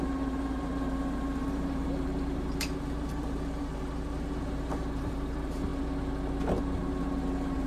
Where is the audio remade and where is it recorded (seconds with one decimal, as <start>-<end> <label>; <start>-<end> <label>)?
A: 0.0-5.7 remade; 5.7-6.6 recorded; 6.6-7.7 remade